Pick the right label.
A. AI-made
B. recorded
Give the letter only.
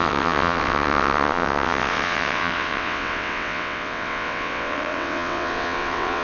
A